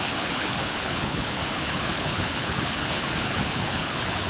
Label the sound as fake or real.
fake